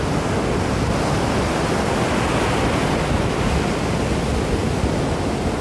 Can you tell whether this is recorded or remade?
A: recorded